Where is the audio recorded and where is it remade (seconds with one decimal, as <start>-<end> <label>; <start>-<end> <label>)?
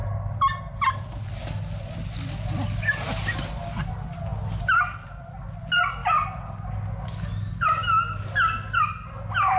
0.0-9.6 recorded